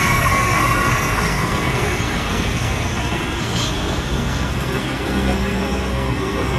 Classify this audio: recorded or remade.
remade